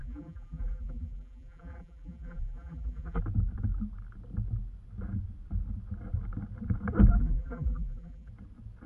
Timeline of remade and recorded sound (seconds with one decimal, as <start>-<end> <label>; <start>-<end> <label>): 0.0-3.2 remade; 3.2-7.2 recorded; 7.2-8.3 remade; 8.3-8.9 recorded